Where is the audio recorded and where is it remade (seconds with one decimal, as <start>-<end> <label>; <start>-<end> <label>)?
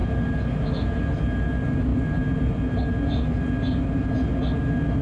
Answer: 0.0-5.0 recorded